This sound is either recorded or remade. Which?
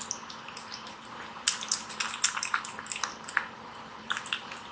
recorded